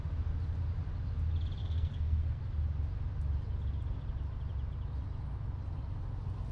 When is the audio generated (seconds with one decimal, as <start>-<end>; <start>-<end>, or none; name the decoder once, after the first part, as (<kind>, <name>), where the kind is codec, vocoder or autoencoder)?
1.6-2.4 (codec, SNAC)